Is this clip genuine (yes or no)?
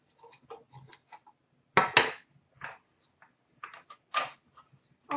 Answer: yes